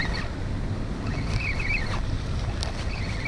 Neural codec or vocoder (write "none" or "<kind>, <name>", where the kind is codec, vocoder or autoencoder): none